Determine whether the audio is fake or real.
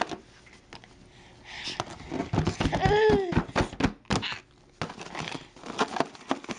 real